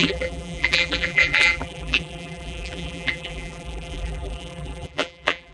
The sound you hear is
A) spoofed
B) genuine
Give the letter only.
A